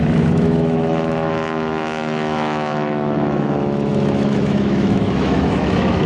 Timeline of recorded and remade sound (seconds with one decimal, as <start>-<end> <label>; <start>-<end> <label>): 0.0-6.1 remade